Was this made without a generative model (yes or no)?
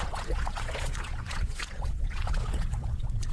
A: no